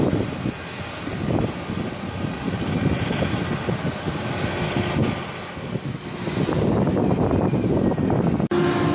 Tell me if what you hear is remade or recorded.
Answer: recorded